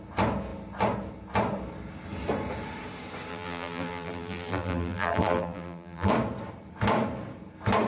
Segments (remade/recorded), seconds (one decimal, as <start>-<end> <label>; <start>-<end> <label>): 0.0-3.3 recorded; 3.3-6.1 remade; 6.1-7.9 recorded

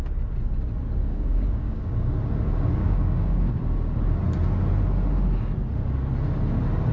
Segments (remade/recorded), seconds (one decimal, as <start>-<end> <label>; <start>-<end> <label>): 0.0-1.0 recorded; 1.0-2.1 remade; 2.1-2.8 recorded; 2.8-3.5 remade; 3.5-6.9 recorded

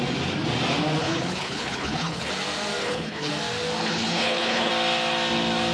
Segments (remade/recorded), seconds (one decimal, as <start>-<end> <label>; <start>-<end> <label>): 0.0-1.0 recorded; 1.0-2.3 remade; 2.3-2.8 recorded; 2.8-3.3 remade; 3.3-3.8 recorded; 3.8-4.7 remade; 4.7-5.7 recorded

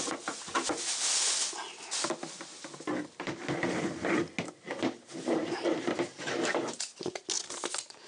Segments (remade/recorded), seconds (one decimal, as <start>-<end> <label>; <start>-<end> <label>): 0.0-8.1 recorded

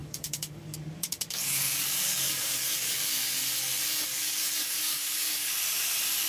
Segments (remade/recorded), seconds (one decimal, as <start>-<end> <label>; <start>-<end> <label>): 0.0-3.4 remade; 3.4-4.1 recorded; 4.1-5.5 remade; 5.5-6.3 recorded

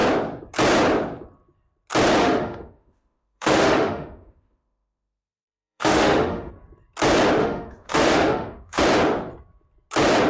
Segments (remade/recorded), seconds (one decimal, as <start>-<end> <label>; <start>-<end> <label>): 0.0-2.2 recorded; 2.2-6.5 remade; 6.5-7.4 recorded; 7.4-8.8 remade; 8.8-10.3 recorded

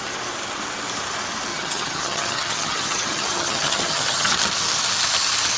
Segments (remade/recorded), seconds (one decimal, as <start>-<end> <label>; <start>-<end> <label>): 0.0-1.5 recorded; 1.5-4.3 remade; 4.3-5.6 recorded

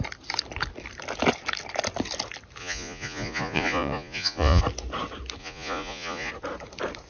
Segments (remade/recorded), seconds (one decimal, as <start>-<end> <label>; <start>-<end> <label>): 0.0-2.6 recorded; 2.6-4.6 remade; 4.6-5.4 recorded; 5.4-6.3 remade; 6.3-7.1 recorded